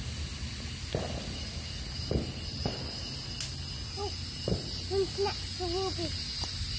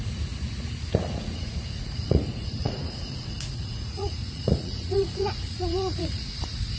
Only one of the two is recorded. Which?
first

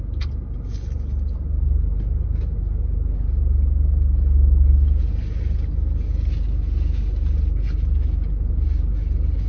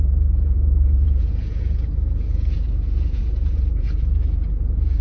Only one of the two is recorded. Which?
first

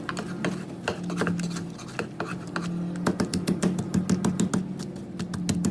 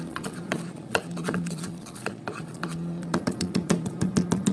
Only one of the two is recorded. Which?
first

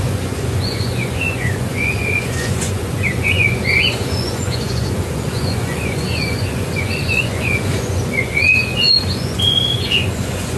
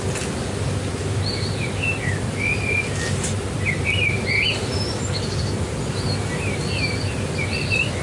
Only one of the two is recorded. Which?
second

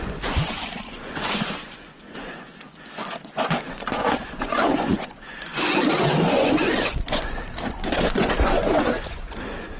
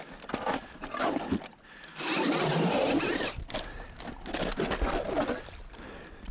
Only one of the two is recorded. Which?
second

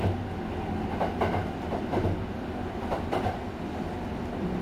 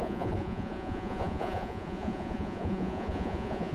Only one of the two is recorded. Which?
first